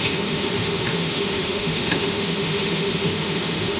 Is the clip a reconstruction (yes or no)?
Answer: yes